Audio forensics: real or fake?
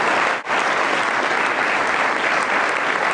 real